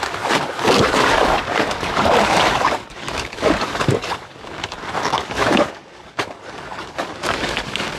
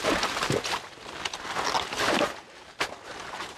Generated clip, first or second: first